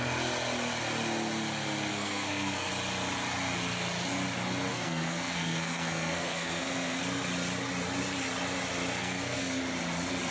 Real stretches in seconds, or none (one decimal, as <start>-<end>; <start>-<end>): 0.0-1.9; 2.7-4.7; 7.0-9.0; 9.6-10.3